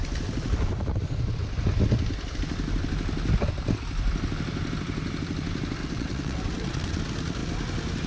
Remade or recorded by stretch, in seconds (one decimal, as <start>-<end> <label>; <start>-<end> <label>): 0.0-5.8 recorded; 5.8-7.0 remade; 7.0-8.1 recorded